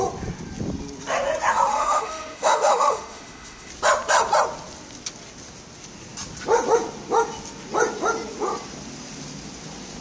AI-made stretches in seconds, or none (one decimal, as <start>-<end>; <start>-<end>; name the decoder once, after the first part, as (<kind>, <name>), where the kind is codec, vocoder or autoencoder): 1.7-3.7 (autoencoder, DAC-VAE)